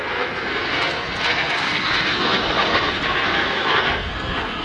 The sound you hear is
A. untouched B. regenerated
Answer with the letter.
B